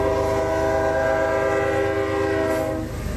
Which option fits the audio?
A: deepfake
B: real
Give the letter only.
B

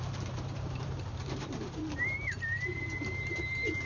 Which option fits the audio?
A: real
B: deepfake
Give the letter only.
B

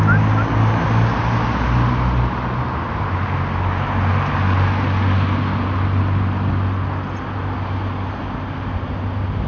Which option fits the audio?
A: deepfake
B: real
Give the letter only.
B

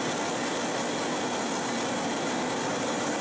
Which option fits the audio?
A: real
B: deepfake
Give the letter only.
A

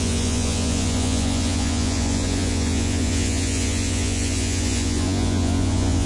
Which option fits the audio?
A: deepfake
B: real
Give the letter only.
A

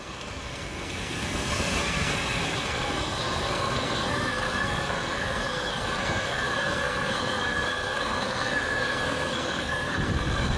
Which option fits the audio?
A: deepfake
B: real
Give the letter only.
A